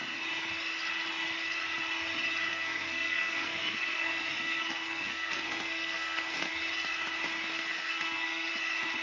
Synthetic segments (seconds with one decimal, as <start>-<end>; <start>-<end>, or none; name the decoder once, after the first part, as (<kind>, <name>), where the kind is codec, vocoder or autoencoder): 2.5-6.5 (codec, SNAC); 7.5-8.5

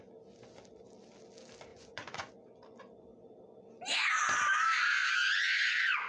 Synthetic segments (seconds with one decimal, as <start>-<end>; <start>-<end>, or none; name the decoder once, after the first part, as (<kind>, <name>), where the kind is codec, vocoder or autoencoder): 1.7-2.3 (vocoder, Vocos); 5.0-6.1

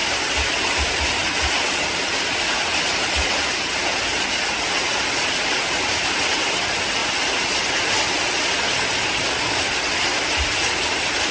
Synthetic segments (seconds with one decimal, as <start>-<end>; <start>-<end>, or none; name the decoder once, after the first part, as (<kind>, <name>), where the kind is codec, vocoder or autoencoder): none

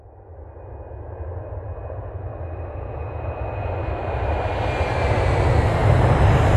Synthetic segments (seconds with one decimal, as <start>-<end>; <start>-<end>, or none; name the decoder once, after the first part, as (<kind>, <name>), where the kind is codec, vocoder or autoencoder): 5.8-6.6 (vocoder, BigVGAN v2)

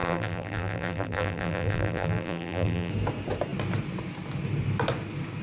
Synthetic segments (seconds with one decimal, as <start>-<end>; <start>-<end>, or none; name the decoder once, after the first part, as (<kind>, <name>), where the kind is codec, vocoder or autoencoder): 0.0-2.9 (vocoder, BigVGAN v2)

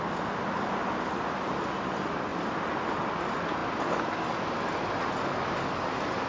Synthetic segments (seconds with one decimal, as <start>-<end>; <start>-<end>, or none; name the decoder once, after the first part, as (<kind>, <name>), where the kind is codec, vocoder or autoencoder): none